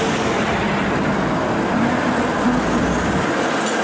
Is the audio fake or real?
real